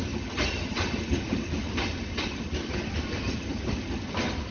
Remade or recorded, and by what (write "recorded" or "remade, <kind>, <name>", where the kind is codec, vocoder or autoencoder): recorded